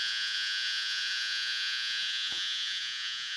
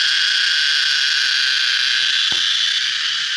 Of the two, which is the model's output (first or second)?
first